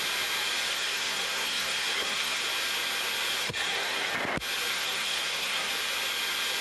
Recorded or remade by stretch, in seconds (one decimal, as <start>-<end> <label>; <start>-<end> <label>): 0.0-0.7 recorded; 0.7-2.4 remade; 2.4-3.4 recorded; 3.4-4.1 remade; 4.1-4.7 recorded; 4.7-5.7 remade; 5.7-6.6 recorded